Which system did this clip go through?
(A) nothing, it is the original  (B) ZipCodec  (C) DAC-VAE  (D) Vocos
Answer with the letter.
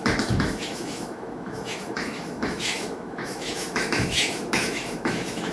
C